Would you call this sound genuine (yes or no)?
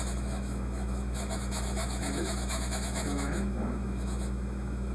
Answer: no